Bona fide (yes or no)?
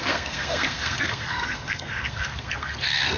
no